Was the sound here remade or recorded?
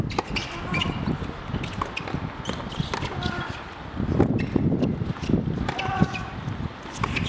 recorded